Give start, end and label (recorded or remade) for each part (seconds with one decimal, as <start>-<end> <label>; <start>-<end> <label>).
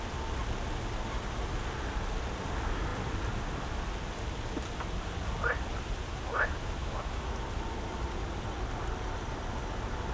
0.0-6.8 recorded; 6.8-7.4 remade; 7.4-10.1 recorded